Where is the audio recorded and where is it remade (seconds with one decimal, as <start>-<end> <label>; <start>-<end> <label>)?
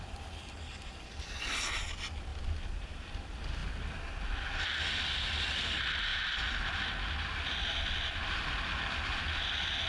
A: 0.0-9.9 recorded